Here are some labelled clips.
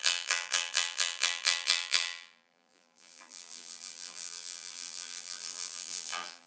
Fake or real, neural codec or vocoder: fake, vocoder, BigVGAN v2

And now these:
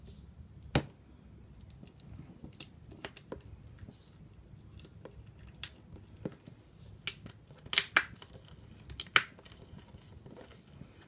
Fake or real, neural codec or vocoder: real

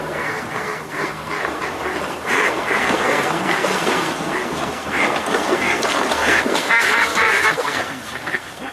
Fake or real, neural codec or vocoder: fake, codec, SNAC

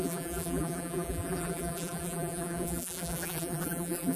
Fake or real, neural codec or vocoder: fake, vocoder, BigVGAN v2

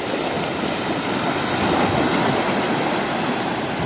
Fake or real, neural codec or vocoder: real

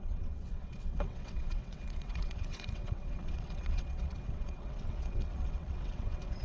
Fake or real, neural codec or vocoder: fake, vocoder, WaveNeXt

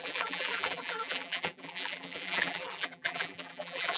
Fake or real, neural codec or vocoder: fake, vocoder, BigVGAN v2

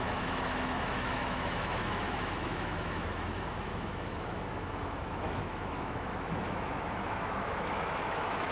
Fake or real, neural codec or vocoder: fake, autoencoder, DAC-VAE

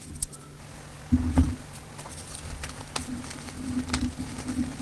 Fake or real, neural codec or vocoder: real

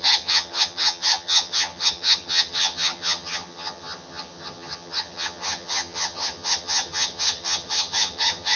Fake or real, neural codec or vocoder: fake, vocoder, HiFi-GAN